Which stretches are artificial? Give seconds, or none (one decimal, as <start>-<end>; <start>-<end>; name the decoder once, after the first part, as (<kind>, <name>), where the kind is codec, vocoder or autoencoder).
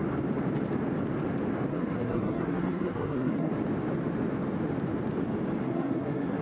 1.7-3.5 (codec, SNAC); 5.6-6.4